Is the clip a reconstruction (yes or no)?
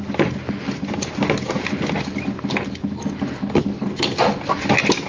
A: no